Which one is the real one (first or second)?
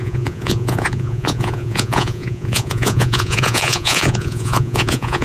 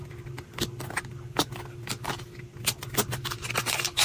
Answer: second